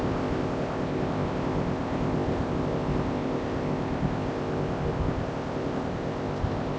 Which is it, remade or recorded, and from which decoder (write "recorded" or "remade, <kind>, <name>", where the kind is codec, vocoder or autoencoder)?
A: remade, codec, ZipCodec